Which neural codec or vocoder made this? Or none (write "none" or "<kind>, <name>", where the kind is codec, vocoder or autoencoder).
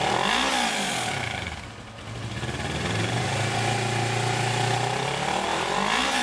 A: none